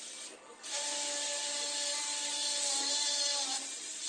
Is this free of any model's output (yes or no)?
yes